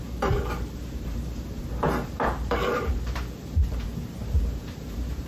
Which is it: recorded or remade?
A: remade